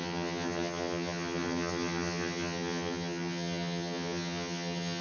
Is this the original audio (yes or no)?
no